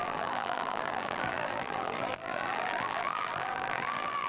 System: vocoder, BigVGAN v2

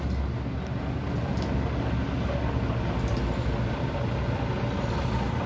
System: none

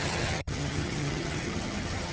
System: vocoder, HiFi-GAN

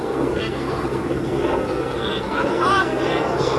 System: codec, SNAC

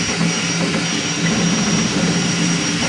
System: none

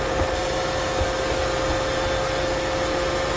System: none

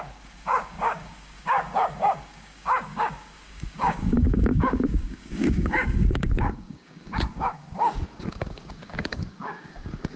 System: codec, DAC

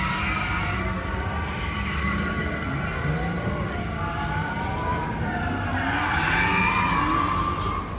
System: none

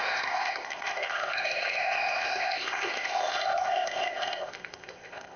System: codec, ZipCodec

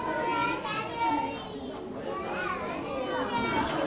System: none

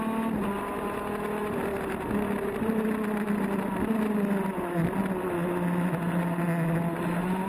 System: none